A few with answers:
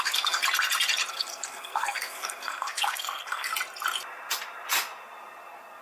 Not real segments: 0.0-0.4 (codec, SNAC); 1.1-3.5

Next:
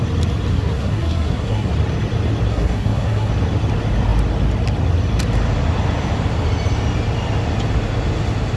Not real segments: 0.5-1.7 (codec, SNAC); 2.5-3.3

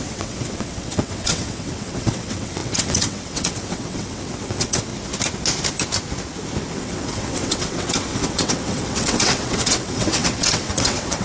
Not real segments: 0.0-4.9 (vocoder, WaveNeXt); 6.7-11.2

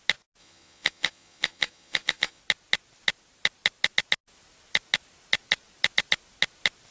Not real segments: 0.4-2.4 (vocoder, Vocos)

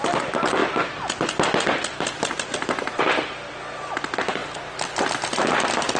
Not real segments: none

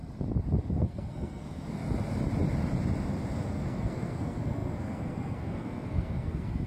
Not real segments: 0.7-1.8 (codec, SNAC); 3.5-6.7